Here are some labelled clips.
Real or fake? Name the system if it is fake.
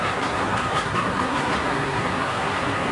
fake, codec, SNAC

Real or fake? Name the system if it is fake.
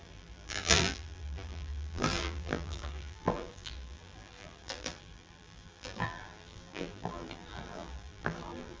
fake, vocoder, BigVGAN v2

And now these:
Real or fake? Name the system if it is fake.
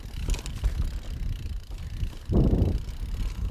real